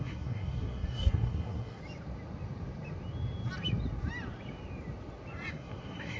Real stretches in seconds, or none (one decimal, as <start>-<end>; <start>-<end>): 1.8-5.5